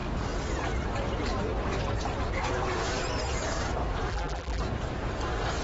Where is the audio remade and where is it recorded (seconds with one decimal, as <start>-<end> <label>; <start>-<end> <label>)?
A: 0.0-4.1 recorded; 4.1-4.6 remade; 4.6-5.6 recorded